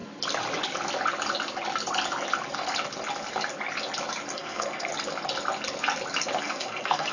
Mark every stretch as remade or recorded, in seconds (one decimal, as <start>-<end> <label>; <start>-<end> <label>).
0.0-4.3 recorded; 4.3-4.9 remade; 4.9-6.4 recorded; 6.4-7.1 remade